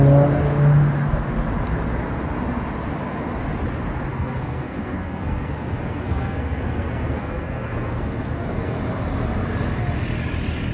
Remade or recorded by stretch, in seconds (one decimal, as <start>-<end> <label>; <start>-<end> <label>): 0.0-4.1 recorded; 4.1-8.8 remade; 8.8-10.7 recorded